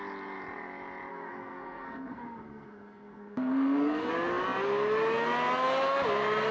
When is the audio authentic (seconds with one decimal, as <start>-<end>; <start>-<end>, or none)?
0.0-1.1; 4.1-6.5